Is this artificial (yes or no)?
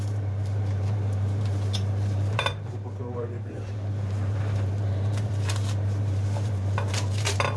yes